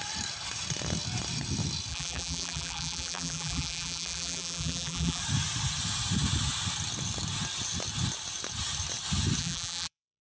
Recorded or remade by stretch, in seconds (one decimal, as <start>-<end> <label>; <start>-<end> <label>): 0.0-1.9 recorded; 1.9-5.2 remade; 5.2-9.4 recorded; 9.4-10.2 remade